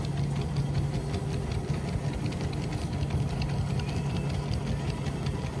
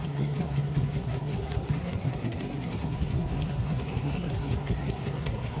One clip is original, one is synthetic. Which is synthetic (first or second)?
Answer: second